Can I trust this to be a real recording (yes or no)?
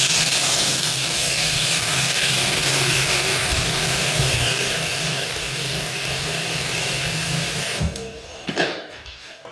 no